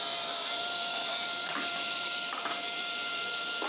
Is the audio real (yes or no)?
no